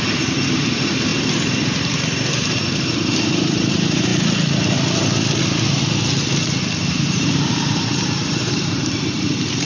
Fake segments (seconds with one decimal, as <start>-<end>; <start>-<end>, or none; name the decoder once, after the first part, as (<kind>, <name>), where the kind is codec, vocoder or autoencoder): 0.0-4.1 (vocoder, BigVGAN v2); 6.9-9.7